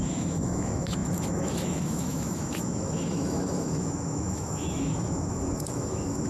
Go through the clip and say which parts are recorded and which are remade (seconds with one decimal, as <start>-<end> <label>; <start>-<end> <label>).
0.0-6.3 remade